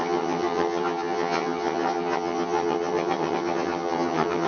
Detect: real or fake fake